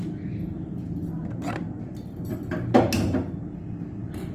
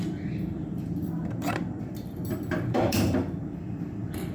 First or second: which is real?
first